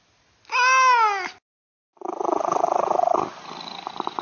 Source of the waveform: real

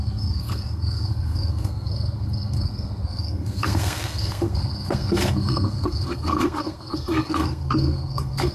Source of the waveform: fake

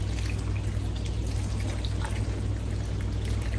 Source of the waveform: real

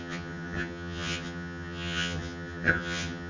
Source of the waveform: fake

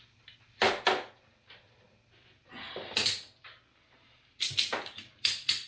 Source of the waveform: real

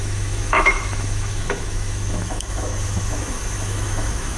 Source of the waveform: fake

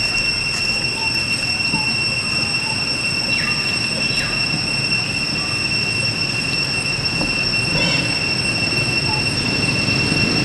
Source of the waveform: real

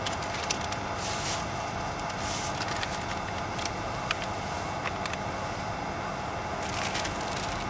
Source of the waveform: real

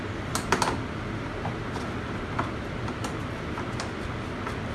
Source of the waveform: real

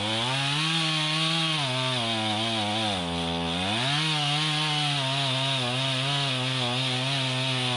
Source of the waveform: real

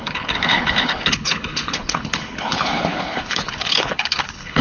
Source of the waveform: fake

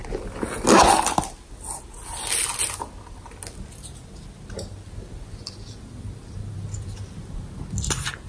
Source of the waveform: real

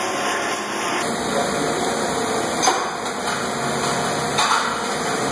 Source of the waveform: fake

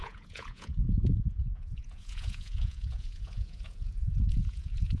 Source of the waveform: fake